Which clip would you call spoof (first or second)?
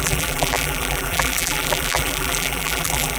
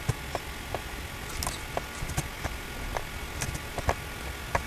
first